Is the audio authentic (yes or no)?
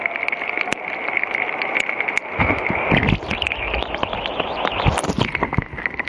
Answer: yes